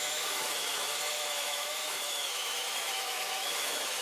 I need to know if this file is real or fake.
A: fake